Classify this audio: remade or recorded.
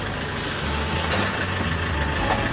recorded